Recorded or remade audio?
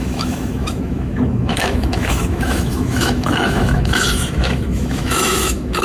remade